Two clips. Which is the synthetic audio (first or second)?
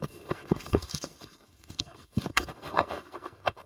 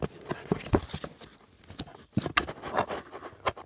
first